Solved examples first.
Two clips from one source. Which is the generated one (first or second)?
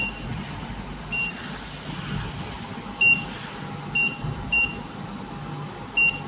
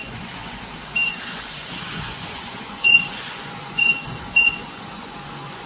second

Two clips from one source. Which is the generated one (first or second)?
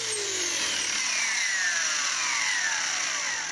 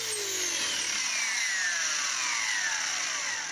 first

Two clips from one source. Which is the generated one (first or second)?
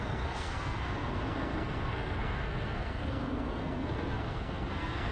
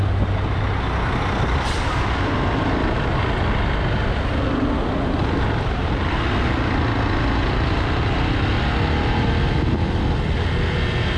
first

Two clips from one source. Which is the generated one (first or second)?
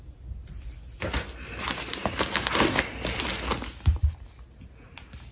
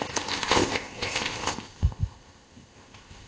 second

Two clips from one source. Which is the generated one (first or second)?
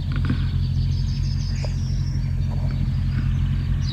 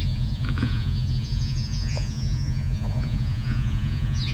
second